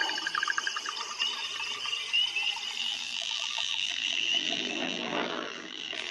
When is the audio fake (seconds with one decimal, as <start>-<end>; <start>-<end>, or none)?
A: 2.8-6.1

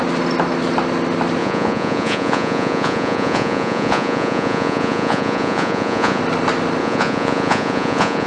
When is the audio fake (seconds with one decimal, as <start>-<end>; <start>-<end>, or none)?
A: 1.4-6.2; 6.8-8.3

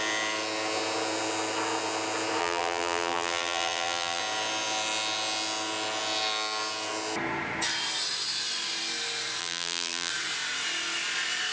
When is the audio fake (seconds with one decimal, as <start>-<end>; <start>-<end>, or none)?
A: 2.4-4.2; 9.4-10.1

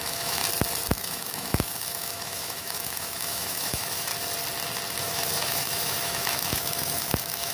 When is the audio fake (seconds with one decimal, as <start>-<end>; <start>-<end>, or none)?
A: 0.0-0.4; 0.9-4.1; 5.0-7.5

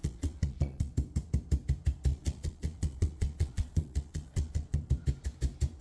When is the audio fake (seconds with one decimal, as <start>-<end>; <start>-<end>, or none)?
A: 0.0-0.9; 2.1-4.9